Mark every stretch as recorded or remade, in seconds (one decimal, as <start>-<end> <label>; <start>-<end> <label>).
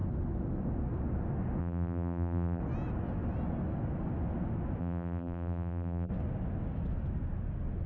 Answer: 0.0-1.6 recorded; 1.6-2.6 remade; 2.6-4.8 recorded; 4.8-6.1 remade; 6.1-7.9 recorded